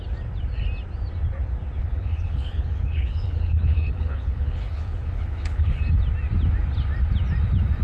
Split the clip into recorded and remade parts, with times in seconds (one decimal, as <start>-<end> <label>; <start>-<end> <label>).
0.0-1.8 recorded; 1.8-5.8 remade; 5.8-7.8 recorded